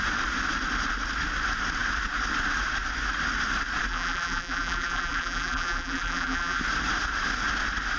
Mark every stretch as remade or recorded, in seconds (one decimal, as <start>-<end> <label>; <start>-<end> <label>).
0.0-3.9 recorded; 3.9-6.6 remade; 6.6-8.0 recorded